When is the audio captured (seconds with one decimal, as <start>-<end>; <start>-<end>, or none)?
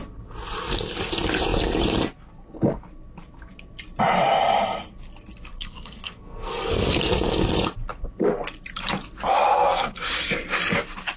0.0-5.5; 7.0-9.5; 10.1-11.2